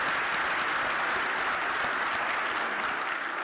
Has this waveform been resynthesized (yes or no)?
no